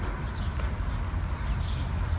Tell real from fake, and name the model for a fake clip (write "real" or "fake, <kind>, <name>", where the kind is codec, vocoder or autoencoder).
real